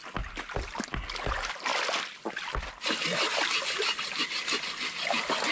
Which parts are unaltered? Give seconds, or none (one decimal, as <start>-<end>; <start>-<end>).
0.0-5.5